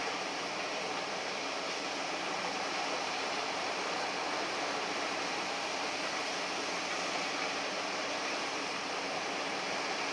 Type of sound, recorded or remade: recorded